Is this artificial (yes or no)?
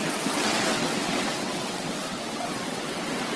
yes